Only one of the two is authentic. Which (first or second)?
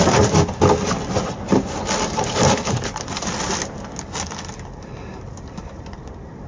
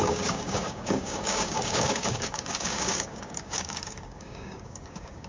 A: first